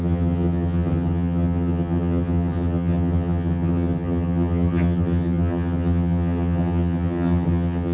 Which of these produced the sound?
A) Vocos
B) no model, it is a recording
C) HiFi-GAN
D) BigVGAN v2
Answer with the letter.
C